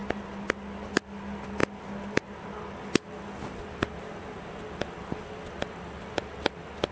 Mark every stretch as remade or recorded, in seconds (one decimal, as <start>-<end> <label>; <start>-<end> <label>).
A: 0.0-6.9 recorded